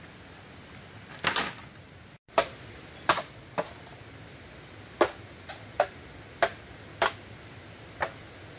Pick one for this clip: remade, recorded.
recorded